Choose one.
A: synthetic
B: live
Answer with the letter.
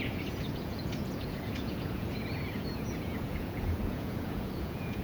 A